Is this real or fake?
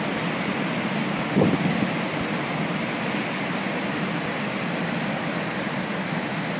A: real